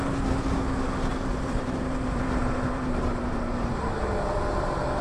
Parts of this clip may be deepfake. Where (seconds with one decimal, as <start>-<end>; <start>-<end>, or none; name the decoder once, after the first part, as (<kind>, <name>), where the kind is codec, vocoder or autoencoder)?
1.1-4.1 (vocoder, BigVGAN v2)